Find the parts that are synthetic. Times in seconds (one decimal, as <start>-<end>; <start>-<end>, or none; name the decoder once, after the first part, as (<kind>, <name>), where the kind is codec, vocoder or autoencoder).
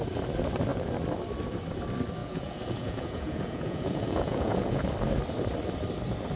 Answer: 2.2-4.9 (vocoder, Vocos)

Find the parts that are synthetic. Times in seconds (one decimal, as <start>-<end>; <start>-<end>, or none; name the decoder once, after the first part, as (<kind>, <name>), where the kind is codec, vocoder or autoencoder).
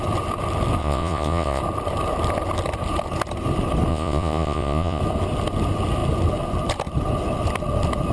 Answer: 0.8-1.6 (vocoder, Vocos); 3.9-5.0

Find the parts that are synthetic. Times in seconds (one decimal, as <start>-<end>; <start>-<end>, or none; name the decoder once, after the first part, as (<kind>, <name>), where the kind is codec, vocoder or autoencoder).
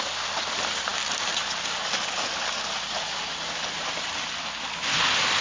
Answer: none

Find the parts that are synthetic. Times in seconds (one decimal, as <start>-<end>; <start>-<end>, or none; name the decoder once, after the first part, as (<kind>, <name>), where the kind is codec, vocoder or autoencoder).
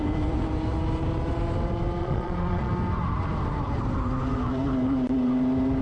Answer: 2.0-2.7 (vocoder, Vocos)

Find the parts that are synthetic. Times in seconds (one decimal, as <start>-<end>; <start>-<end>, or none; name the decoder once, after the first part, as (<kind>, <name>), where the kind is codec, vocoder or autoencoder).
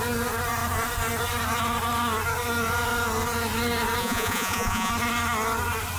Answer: 4.0-4.9 (vocoder, Vocos)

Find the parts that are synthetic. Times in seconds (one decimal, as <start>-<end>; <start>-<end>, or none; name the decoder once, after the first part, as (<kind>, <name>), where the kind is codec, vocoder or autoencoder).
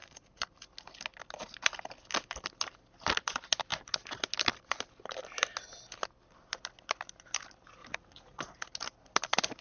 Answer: 0.0-0.7 (vocoder, Vocos); 7.8-8.4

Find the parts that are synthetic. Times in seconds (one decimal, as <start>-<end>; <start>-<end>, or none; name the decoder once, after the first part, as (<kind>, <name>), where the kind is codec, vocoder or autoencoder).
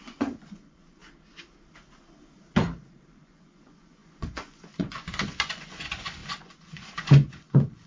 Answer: 0.0-1.0 (vocoder, Vocos); 3.2-7.9